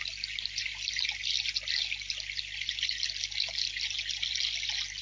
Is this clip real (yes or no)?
yes